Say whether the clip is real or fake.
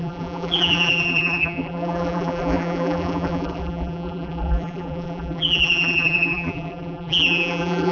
fake